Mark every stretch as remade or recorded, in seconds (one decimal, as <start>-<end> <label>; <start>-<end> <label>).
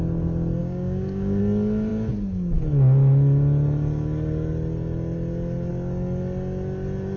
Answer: 0.0-0.6 recorded; 0.6-1.4 remade; 1.4-7.2 recorded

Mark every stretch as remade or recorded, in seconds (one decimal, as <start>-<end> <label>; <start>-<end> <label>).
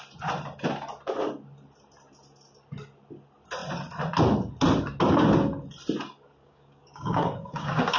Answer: 0.0-6.4 recorded; 6.4-8.0 remade